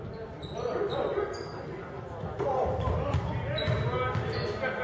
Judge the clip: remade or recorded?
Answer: recorded